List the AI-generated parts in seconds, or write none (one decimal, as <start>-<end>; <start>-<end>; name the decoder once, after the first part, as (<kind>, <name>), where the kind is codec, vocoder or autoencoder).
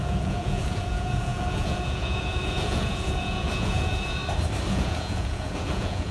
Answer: 0.0-4.2 (vocoder, Vocos); 4.7-6.1